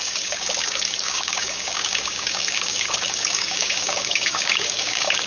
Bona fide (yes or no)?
no